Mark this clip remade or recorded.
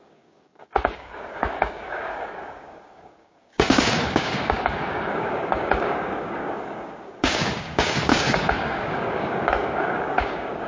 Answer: remade